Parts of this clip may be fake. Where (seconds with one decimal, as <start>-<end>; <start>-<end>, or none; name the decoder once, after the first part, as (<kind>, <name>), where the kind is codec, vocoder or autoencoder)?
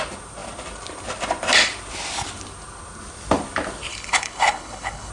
3.9-5.1 (codec, HILCodec)